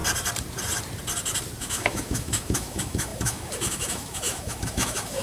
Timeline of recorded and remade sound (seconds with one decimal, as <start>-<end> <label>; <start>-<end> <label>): 0.0-1.6 recorded; 1.6-5.2 remade